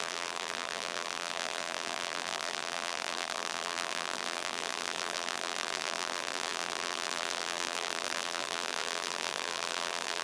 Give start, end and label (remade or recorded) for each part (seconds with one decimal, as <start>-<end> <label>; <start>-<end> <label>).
0.0-10.2 remade